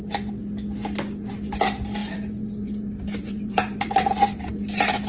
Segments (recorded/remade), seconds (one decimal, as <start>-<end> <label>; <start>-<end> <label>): 0.0-2.0 recorded; 2.0-4.5 remade; 4.5-5.1 recorded

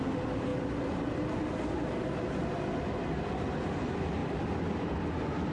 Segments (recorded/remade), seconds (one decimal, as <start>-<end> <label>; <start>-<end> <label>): 0.0-5.5 recorded

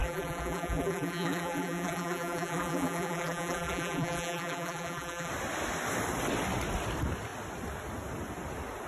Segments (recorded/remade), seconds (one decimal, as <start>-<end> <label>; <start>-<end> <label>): 0.0-5.3 remade; 5.3-8.9 recorded

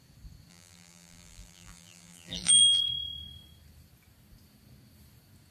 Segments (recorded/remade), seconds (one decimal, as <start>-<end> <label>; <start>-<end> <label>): 0.0-0.5 recorded; 0.5-2.8 remade; 2.8-5.5 recorded

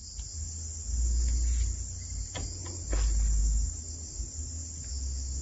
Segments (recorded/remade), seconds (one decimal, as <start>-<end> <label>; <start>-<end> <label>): 0.0-5.4 recorded

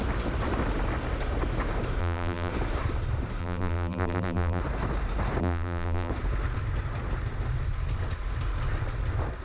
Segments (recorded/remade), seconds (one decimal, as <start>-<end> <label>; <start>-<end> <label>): 0.0-2.0 recorded; 2.0-2.5 remade; 2.5-3.4 recorded; 3.4-4.6 remade; 4.6-5.4 recorded; 5.4-6.1 remade; 6.1-9.4 recorded